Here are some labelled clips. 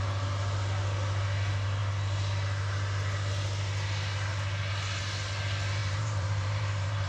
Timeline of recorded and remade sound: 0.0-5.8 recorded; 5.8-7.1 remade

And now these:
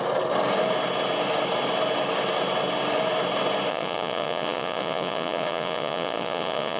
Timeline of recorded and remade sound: 0.0-3.7 recorded; 3.7-6.8 remade

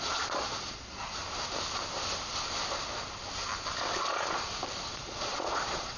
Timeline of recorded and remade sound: 0.0-1.2 remade; 1.2-4.8 recorded; 4.8-6.0 remade

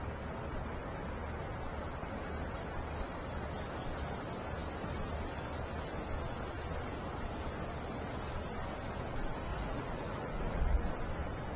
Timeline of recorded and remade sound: 0.0-9.5 recorded; 9.5-10.9 remade; 10.9-11.6 recorded

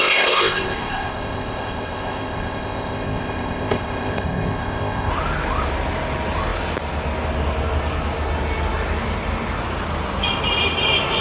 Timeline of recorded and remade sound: 0.0-5.1 remade; 5.1-11.2 recorded